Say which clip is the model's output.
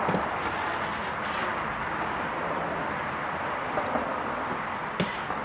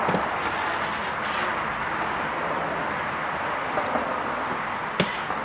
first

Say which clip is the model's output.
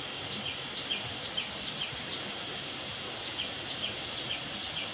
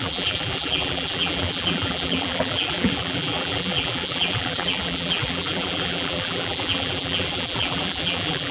second